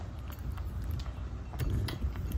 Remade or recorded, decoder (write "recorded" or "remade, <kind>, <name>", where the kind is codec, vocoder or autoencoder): remade, vocoder, BigVGAN v2